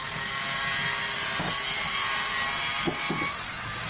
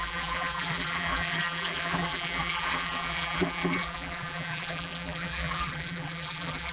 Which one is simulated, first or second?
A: second